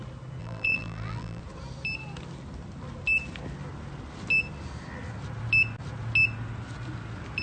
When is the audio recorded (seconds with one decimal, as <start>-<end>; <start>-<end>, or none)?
0.0-0.4; 1.4-7.4